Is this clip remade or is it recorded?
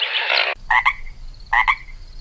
recorded